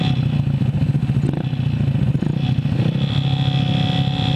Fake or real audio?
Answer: real